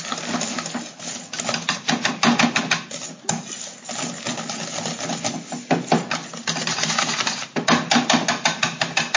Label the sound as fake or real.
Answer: real